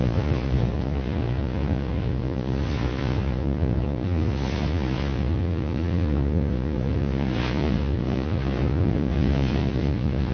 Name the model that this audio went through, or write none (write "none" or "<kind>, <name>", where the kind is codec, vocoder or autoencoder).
vocoder, Vocos